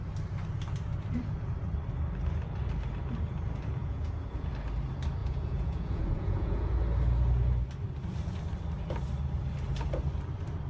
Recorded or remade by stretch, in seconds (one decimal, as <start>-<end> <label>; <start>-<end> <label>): 0.0-3.8 recorded; 3.8-4.5 remade; 4.5-5.2 recorded; 5.2-6.7 remade; 6.7-10.7 recorded